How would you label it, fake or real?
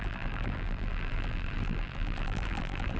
fake